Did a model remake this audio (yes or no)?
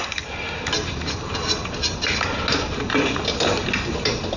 no